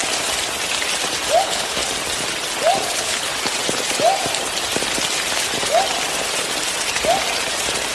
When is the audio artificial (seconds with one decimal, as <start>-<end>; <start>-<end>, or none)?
1.4-1.8; 2.9-3.3